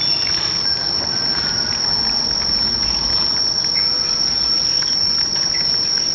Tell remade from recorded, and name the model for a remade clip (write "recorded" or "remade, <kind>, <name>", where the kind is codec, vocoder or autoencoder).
recorded